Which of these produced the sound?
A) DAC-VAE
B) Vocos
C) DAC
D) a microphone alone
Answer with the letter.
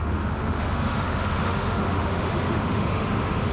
A